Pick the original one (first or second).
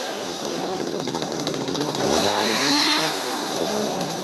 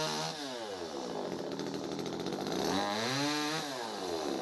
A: second